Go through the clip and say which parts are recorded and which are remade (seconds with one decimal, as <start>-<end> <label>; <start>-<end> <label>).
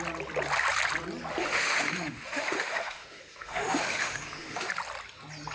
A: 0.0-1.4 recorded; 1.4-4.7 remade; 4.7-5.5 recorded